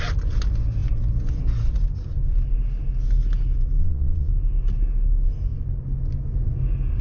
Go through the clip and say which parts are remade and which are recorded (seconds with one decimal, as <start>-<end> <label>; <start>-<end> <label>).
0.0-3.8 recorded; 3.8-4.3 remade; 4.3-7.0 recorded